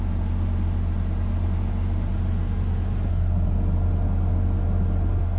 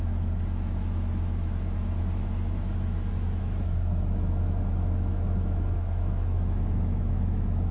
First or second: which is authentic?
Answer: first